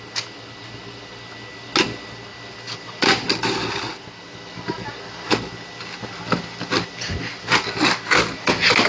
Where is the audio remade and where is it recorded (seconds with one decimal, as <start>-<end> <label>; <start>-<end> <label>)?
0.0-8.9 recorded

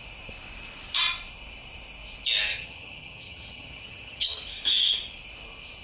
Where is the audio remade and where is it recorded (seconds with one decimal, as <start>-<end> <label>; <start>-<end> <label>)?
0.0-2.5 recorded; 2.5-4.4 remade; 4.4-5.8 recorded

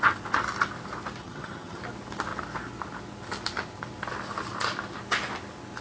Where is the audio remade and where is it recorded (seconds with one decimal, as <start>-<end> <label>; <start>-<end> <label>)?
0.0-1.2 recorded; 1.2-1.8 remade; 1.8-5.8 recorded

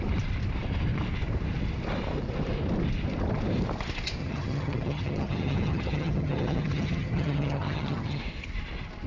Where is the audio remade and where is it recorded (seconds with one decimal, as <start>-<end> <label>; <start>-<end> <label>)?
0.0-4.2 recorded; 4.2-8.2 remade; 8.2-9.1 recorded

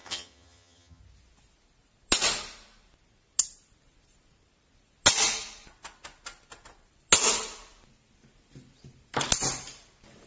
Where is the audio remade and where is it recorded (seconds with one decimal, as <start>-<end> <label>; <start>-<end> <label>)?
0.0-1.0 remade; 1.0-10.3 recorded